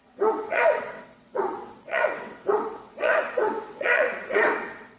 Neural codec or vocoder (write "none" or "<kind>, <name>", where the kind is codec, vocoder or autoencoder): vocoder, WaveNeXt